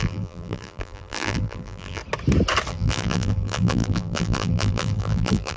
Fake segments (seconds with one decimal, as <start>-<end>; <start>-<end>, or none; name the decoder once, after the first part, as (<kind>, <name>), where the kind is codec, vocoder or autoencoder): 0.0-2.0 (vocoder, BigVGAN v2); 2.7-5.6